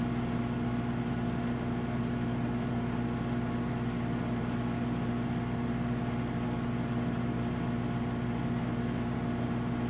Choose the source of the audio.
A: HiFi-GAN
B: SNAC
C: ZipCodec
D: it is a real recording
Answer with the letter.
D